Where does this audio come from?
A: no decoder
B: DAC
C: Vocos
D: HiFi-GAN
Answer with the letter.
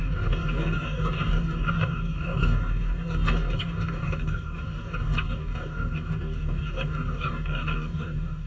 B